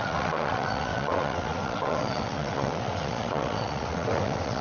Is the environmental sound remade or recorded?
remade